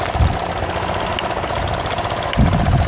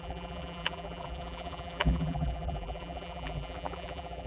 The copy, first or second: second